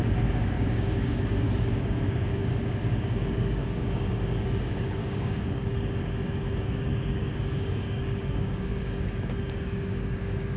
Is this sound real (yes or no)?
no